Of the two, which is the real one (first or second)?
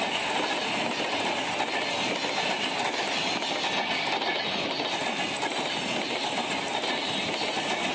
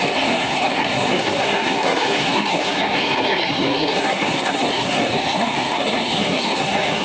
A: first